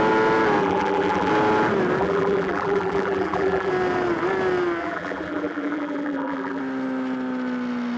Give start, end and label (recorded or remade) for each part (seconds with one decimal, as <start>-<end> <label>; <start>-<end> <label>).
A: 0.0-0.6 recorded; 0.6-1.3 remade; 1.3-2.0 recorded; 2.0-3.7 remade; 3.7-4.8 recorded; 4.8-6.6 remade; 6.6-8.0 recorded